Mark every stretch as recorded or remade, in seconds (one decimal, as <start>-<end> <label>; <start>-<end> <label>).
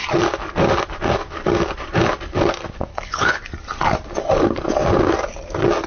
0.0-2.9 recorded; 2.9-3.4 remade; 3.4-5.9 recorded